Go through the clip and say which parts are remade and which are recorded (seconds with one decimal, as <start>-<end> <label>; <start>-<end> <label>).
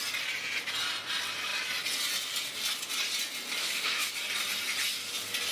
0.0-3.6 recorded; 3.6-4.1 remade; 4.1-5.5 recorded